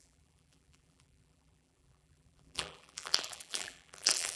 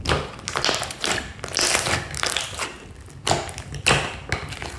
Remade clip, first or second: first